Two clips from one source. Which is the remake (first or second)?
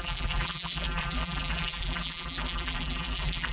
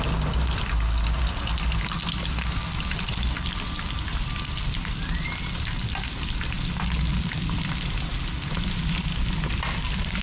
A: first